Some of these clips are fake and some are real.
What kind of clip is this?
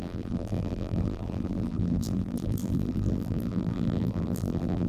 fake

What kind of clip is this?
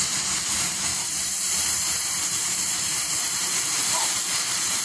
fake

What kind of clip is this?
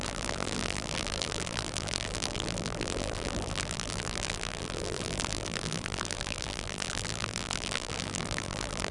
fake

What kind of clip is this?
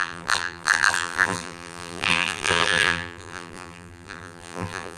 fake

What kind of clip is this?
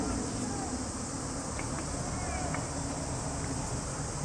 real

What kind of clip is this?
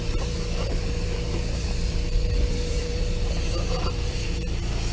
fake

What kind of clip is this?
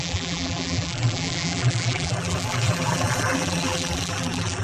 fake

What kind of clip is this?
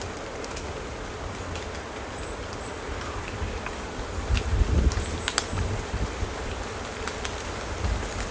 fake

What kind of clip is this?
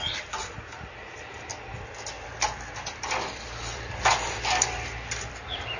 fake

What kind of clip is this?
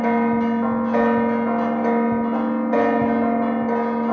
real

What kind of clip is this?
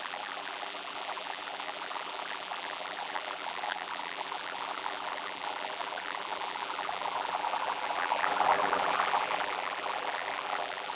fake